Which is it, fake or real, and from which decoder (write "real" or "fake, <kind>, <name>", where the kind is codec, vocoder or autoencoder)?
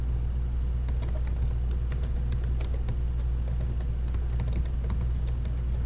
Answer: real